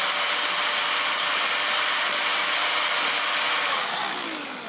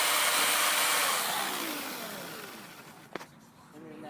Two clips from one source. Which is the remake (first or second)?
second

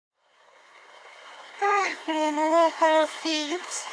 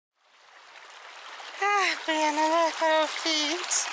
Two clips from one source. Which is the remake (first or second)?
first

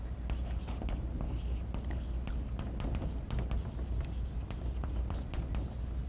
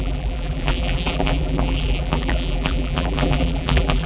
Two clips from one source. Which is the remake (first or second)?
second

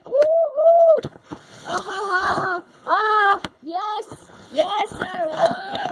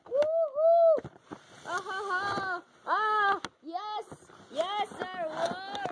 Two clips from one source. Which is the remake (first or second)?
first